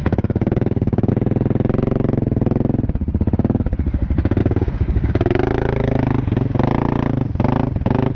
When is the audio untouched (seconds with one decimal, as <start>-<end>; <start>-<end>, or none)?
1.1-4.4; 5.1-8.2